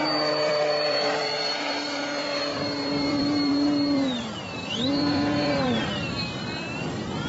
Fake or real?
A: fake